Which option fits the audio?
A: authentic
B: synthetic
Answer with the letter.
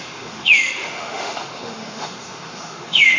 B